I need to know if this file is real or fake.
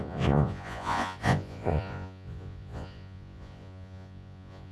fake